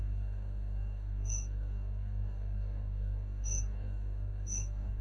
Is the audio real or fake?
fake